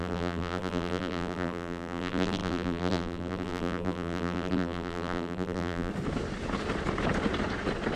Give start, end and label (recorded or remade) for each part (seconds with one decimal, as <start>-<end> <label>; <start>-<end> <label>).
0.0-5.9 remade; 5.9-8.0 recorded